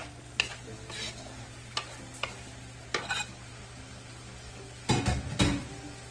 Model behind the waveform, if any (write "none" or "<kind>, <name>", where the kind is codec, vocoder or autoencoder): none